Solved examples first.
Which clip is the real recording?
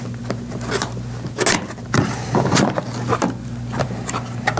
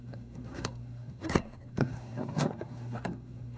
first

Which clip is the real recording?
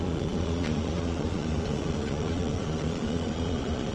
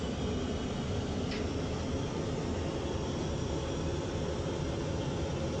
second